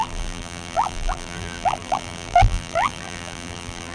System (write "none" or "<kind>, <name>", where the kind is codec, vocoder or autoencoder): vocoder, BigVGAN v2